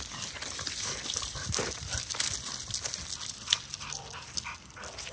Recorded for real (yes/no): yes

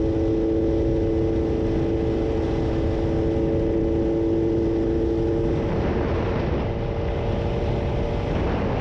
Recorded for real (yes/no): yes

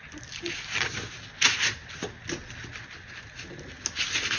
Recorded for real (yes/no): yes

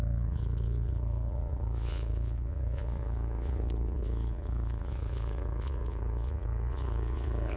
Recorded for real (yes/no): no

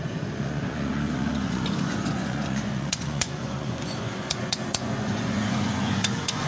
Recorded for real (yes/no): no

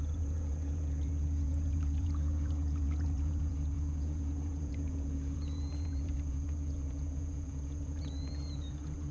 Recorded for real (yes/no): no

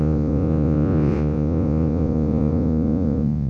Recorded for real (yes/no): no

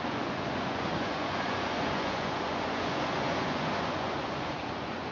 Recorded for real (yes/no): no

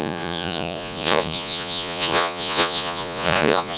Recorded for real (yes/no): no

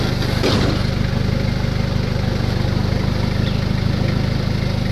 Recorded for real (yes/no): yes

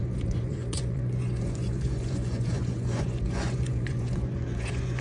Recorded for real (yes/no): no